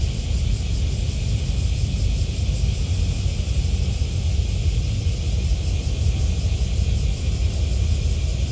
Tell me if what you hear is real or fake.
real